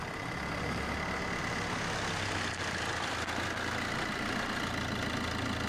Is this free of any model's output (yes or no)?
yes